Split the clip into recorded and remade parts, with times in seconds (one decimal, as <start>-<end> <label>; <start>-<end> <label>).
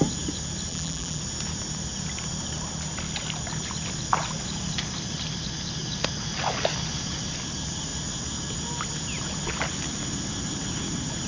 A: 0.0-0.7 recorded; 0.7-1.2 remade; 1.2-11.3 recorded